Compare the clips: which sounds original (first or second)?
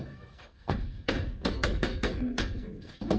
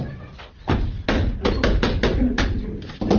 second